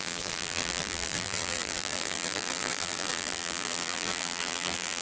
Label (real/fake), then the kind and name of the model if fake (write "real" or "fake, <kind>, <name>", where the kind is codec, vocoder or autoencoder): fake, vocoder, BigVGAN v2